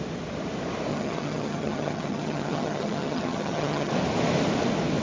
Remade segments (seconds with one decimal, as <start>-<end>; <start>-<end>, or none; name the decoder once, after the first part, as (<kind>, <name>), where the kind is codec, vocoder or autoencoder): 0.9-3.9 (vocoder, HiFi-GAN)